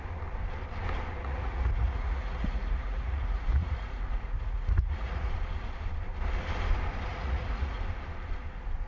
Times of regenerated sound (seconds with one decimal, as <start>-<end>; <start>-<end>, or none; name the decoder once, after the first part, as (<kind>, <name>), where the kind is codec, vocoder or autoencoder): 1.2-5.3 (vocoder, Vocos); 7.1-7.8